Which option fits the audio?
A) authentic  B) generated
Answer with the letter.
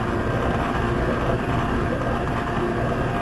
A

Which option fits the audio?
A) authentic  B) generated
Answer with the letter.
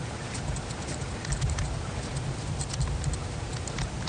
A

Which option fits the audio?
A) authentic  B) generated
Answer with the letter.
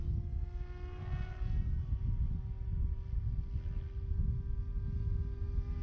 A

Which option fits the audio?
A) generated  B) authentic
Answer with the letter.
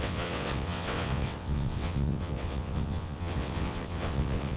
A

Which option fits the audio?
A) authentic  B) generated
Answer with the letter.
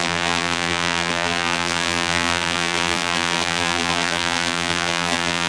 B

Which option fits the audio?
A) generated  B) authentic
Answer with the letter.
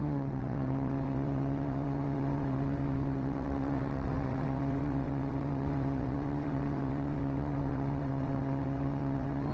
A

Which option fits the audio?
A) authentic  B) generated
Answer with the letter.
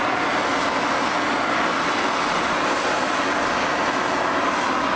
A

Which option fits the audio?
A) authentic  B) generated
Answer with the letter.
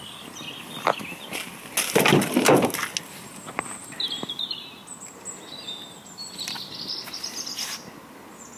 A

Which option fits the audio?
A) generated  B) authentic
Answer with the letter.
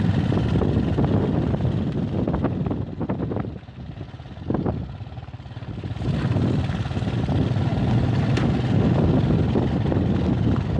B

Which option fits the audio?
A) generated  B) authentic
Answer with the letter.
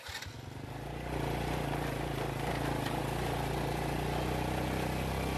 B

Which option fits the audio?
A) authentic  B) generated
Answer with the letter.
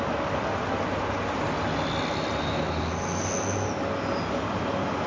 A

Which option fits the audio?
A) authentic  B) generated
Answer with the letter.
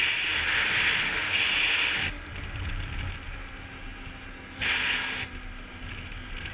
A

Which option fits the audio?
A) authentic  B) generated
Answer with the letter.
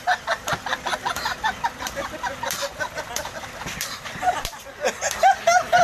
A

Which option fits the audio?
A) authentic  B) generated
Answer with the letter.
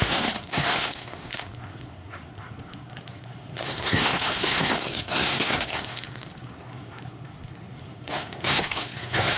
B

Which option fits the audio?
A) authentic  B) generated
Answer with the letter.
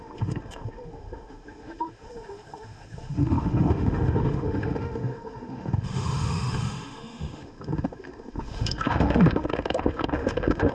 B